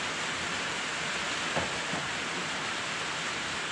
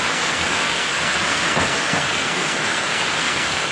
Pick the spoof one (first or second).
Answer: second